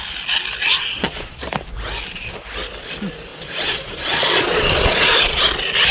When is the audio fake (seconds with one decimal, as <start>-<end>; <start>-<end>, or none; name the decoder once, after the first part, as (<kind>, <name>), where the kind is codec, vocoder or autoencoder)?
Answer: 0.7-1.4 (vocoder, Vocos); 3.3-5.4